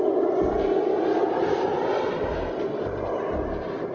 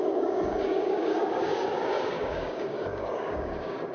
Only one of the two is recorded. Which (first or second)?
first